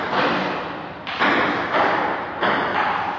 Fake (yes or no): no